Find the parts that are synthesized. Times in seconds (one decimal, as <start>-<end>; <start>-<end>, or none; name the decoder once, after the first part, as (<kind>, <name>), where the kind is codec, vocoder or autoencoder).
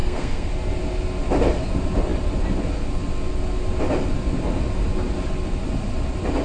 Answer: 0.0-0.5 (codec, SNAC)